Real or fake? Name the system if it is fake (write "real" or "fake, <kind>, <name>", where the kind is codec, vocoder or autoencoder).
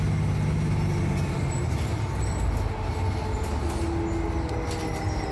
real